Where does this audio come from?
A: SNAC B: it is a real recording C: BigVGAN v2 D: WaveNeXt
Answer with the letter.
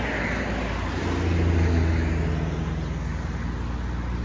B